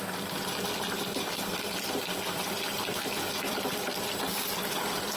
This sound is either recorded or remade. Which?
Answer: recorded